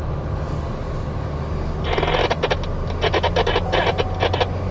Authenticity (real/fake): real